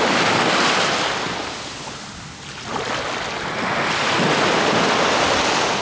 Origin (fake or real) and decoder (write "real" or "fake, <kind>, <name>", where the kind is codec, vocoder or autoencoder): real